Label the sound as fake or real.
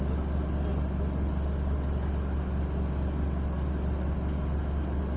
real